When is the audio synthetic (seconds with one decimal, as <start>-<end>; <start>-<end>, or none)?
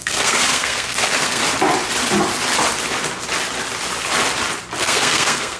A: 0.0-1.4; 4.8-5.6